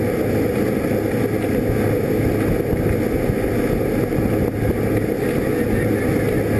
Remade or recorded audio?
recorded